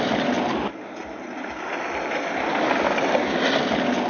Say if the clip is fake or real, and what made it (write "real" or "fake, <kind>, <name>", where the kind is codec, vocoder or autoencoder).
real